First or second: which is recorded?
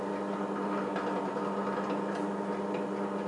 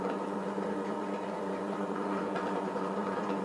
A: first